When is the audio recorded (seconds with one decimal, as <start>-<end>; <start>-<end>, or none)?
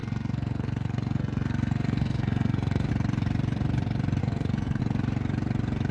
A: 2.9-4.2; 4.8-5.9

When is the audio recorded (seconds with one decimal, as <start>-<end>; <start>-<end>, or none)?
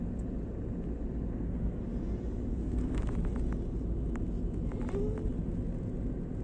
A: 0.0-1.3; 1.8-2.5; 3.0-6.4